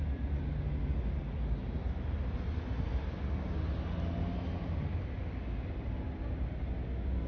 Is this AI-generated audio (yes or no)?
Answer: no